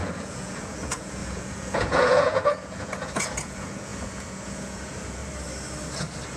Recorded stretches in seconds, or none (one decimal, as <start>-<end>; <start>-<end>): 5.2-6.4